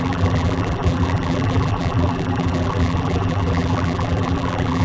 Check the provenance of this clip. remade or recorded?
remade